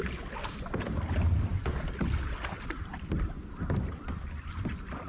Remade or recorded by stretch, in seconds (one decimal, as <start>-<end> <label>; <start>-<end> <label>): 0.0-1.5 recorded; 1.5-4.6 remade; 4.6-5.1 recorded

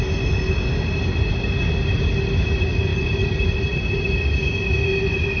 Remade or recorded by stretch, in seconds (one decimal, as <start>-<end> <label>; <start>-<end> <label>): 0.0-2.9 recorded; 2.9-4.2 remade; 4.2-5.4 recorded

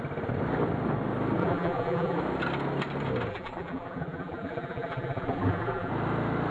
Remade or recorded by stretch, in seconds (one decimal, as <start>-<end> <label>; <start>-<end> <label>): 0.0-1.4 recorded; 1.4-2.2 remade; 2.2-3.3 recorded; 3.3-5.9 remade; 5.9-6.5 recorded

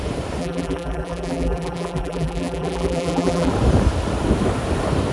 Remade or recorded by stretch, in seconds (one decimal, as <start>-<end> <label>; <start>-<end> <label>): 0.0-0.4 recorded; 0.4-3.5 remade; 3.5-5.1 recorded

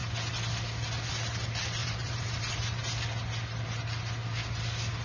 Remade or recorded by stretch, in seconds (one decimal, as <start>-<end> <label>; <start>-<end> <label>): 0.0-1.8 recorded; 1.8-2.4 remade; 2.4-5.0 recorded